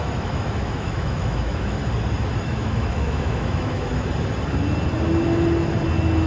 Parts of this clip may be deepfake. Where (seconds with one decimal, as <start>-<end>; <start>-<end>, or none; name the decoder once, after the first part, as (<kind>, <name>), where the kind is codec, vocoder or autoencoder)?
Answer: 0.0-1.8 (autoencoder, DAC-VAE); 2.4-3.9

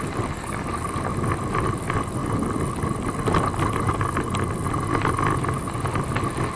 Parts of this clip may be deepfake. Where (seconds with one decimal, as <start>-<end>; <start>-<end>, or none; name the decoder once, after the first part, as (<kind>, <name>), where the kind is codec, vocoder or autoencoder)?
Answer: none

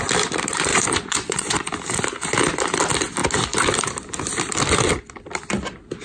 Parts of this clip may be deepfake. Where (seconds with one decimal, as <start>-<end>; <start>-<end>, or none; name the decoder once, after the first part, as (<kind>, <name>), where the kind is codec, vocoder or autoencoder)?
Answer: 0.7-1.7 (vocoder, Vocos)

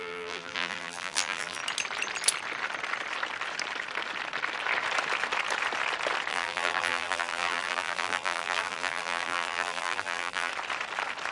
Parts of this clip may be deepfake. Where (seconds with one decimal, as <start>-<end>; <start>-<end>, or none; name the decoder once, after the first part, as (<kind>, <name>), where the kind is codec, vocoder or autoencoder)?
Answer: 0.0-1.6 (vocoder, BigVGAN v2); 6.3-10.5